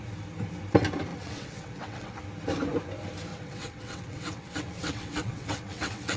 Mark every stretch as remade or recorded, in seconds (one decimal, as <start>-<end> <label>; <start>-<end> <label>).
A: 0.0-1.1 recorded; 1.1-2.2 remade; 2.2-3.3 recorded; 3.3-6.2 remade